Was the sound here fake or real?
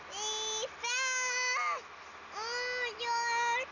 real